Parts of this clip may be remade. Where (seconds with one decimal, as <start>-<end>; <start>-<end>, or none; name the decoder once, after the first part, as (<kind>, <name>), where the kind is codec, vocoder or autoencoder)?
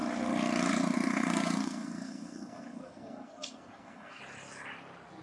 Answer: 1.1-4.2 (codec, SNAC)